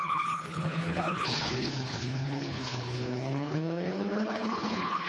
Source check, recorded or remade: remade